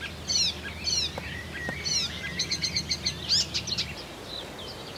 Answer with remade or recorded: recorded